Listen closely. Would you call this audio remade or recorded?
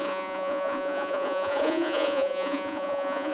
remade